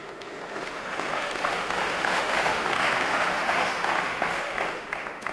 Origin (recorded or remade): remade